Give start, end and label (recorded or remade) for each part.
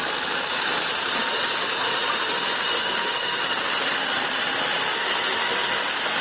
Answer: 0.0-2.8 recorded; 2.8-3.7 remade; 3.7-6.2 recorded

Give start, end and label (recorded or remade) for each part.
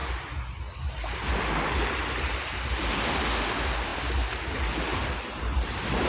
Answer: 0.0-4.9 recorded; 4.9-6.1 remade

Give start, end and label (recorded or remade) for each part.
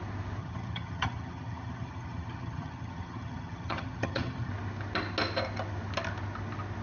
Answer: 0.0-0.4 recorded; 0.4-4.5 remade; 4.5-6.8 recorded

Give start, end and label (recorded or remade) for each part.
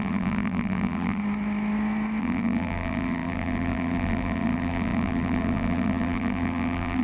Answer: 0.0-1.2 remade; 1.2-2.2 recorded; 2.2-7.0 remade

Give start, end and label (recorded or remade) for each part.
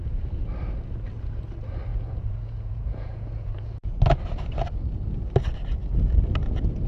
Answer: 0.0-1.9 recorded; 1.9-4.0 remade; 4.0-6.9 recorded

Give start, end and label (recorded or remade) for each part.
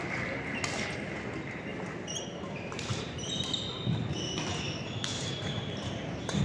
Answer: 0.0-1.7 recorded; 1.7-3.6 remade; 3.6-5.1 recorded; 5.1-6.4 remade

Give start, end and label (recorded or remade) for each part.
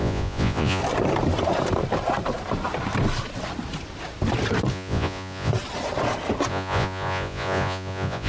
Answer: 0.0-0.8 remade; 0.8-4.7 recorded; 4.7-5.5 remade; 5.5-6.5 recorded; 6.5-8.3 remade